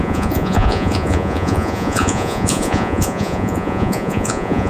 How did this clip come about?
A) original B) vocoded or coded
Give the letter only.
B